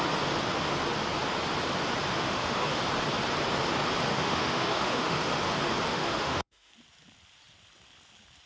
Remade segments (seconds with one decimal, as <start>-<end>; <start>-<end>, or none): 2.1-2.8; 4.1-5.3; 5.9-6.7